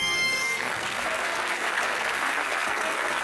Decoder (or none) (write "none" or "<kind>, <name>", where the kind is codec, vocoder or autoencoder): codec, SNAC